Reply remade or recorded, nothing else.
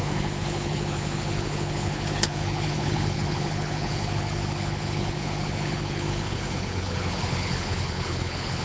remade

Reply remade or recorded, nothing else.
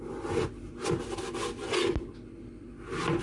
recorded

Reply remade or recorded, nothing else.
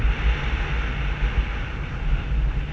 recorded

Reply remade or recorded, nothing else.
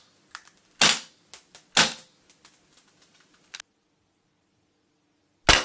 recorded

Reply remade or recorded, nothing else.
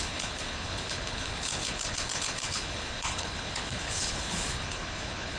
remade